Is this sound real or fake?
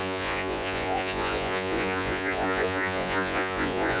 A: fake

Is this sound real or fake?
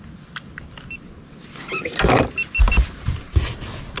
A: real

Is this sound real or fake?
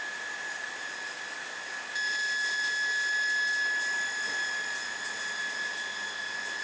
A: real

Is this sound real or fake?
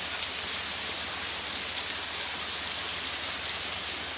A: real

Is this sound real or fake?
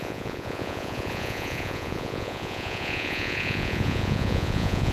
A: fake